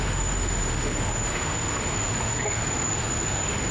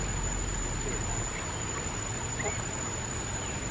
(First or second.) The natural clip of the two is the second